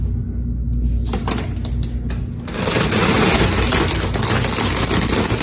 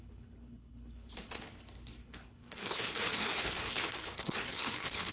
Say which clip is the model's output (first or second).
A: second